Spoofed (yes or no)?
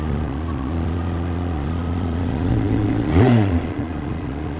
yes